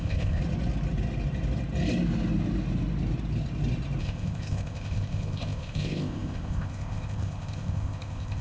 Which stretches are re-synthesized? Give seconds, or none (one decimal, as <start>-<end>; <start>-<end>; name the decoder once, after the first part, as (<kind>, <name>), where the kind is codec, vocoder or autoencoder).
0.0-0.4 (codec, ZipCodec); 4.0-8.4